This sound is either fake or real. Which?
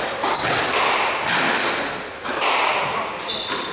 real